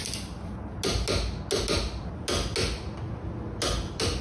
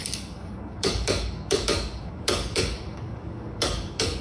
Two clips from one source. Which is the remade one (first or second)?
second